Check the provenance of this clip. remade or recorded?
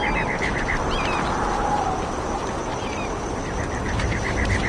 recorded